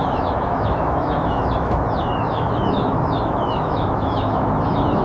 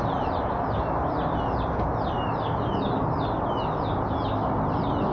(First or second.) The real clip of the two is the second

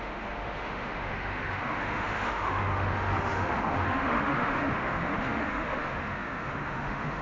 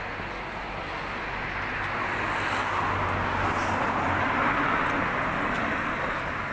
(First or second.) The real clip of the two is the second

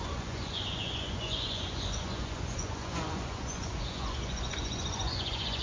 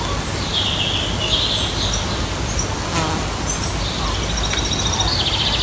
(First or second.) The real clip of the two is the second